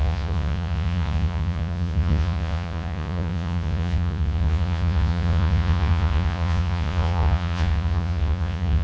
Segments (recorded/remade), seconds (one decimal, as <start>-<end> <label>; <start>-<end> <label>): 0.0-8.8 remade